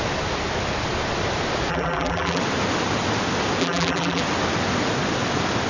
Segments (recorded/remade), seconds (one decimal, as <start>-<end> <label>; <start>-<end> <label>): 0.0-1.7 recorded; 1.7-2.4 remade; 2.4-3.6 recorded; 3.6-4.2 remade; 4.2-5.7 recorded